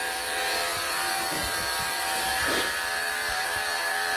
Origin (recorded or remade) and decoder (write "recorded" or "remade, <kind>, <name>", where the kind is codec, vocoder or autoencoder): remade, vocoder, BigVGAN v2